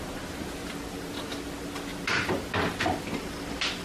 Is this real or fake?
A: real